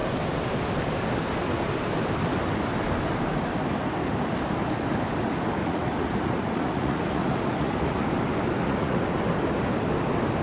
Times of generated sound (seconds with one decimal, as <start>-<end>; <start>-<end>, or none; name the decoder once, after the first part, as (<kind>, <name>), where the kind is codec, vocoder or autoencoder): 5.6-8.1 (vocoder, Vocos); 8.6-9.2